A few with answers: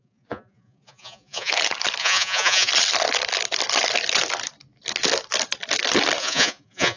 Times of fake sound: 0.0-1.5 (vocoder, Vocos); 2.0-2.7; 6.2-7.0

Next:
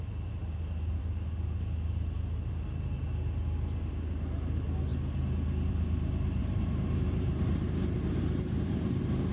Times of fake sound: 6.4-8.6 (vocoder, BigVGAN v2)

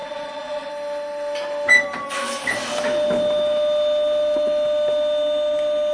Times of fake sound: 0.0-0.7 (vocoder, Vocos)

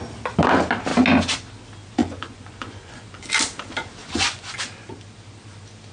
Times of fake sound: 2.0-3.3 (vocoder, Vocos); 4.0-4.6

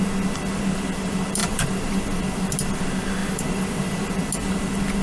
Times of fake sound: 1.4-2.2 (vocoder, BigVGAN v2); 3.2-4.2

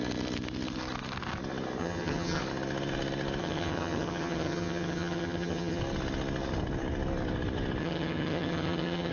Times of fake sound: 1.8-2.4 (vocoder, HiFi-GAN); 3.4-5.8; 7.8-9.1

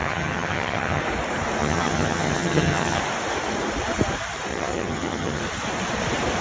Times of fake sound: 0.0-1.0 (vocoder, HiFi-GAN); 1.6-3.0; 4.5-5.4